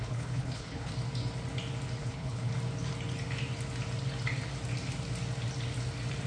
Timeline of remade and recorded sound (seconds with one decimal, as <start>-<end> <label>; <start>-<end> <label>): 0.0-0.9 remade; 0.9-2.0 recorded; 2.0-2.5 remade; 2.5-6.3 recorded